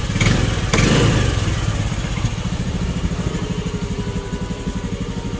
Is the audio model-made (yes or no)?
no